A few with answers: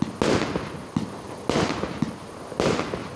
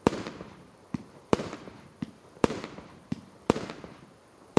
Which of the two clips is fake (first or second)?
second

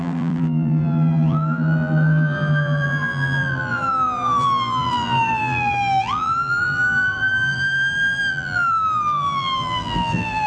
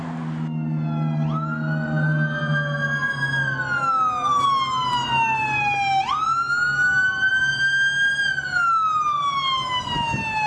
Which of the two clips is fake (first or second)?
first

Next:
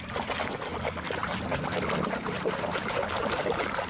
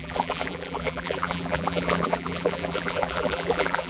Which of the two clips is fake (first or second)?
second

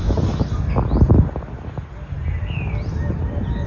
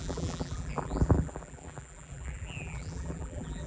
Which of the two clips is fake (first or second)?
second